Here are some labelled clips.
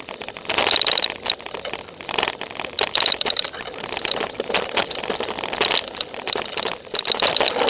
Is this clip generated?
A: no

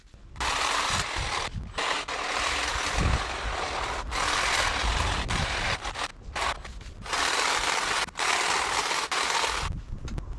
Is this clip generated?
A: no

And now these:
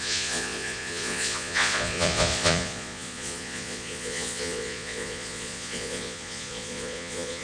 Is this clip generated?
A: yes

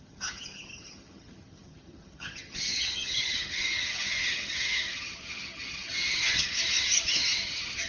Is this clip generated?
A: yes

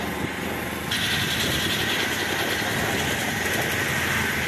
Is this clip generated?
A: no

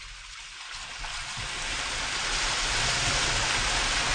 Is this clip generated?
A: no